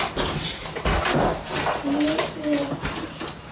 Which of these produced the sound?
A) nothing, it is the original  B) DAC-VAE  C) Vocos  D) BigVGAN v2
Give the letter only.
A